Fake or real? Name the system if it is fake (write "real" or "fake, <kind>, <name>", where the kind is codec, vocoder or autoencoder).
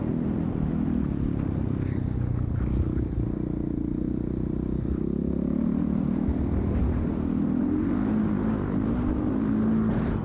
real